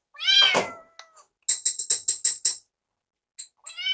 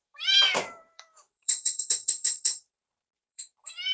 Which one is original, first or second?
first